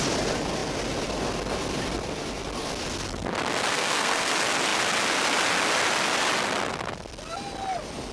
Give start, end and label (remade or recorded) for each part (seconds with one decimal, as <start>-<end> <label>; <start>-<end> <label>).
0.0-3.7 recorded; 3.7-4.3 remade; 4.3-8.1 recorded